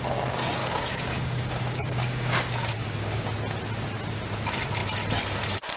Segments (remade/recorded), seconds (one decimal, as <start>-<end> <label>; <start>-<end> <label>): 0.0-0.6 recorded; 0.6-3.2 remade; 3.2-5.8 recorded